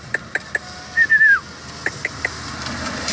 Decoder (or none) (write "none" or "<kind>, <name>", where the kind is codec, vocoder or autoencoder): none